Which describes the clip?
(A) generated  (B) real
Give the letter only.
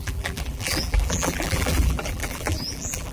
A